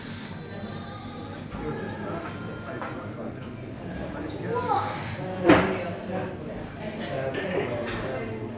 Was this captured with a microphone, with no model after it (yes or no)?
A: yes